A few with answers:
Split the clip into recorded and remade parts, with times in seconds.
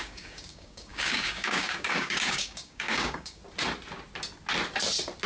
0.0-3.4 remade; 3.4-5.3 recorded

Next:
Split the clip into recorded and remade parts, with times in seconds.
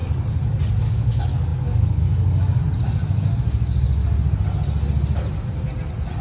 0.0-0.8 recorded; 0.8-2.6 remade; 2.6-6.2 recorded